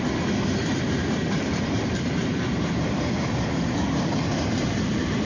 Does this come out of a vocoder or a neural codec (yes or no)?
yes